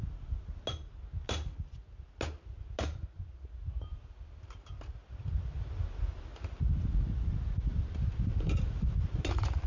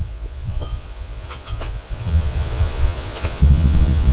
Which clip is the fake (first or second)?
second